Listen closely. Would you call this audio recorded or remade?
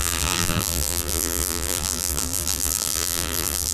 remade